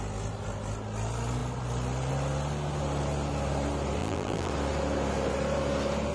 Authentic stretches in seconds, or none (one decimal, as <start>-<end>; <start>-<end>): 0.0-4.0; 4.5-6.1